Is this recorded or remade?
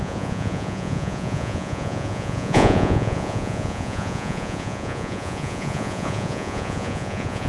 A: remade